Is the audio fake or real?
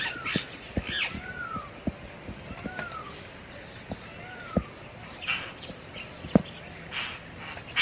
real